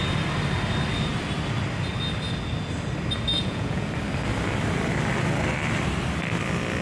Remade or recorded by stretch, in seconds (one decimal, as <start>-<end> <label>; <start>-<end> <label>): 0.0-3.3 recorded; 3.3-3.9 remade; 3.9-6.8 recorded